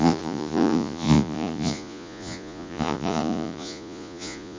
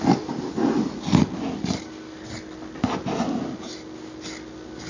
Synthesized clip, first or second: first